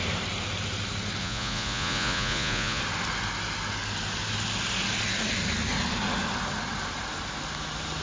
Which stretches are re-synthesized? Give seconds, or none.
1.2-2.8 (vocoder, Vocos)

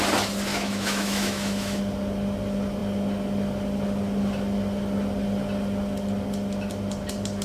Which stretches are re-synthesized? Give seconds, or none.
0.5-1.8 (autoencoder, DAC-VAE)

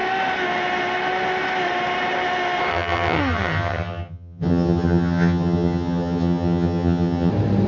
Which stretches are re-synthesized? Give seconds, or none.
2.7-7.3 (vocoder, HiFi-GAN)